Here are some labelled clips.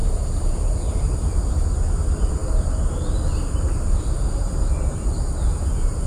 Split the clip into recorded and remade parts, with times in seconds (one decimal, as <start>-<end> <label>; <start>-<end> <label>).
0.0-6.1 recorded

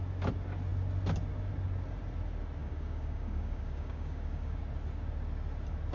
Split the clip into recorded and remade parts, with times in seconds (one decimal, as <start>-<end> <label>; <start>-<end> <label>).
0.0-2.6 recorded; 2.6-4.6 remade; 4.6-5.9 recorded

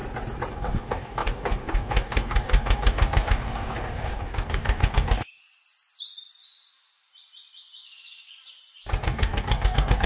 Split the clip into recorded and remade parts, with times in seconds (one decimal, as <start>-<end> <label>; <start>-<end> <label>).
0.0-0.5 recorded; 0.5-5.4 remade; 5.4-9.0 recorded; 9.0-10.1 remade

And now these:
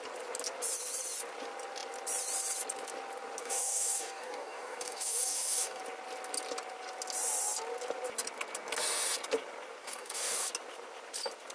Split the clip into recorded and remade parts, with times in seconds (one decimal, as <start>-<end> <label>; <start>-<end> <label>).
0.0-3.4 recorded; 3.4-5.8 remade; 5.8-9.8 recorded; 9.8-10.5 remade; 10.5-11.5 recorded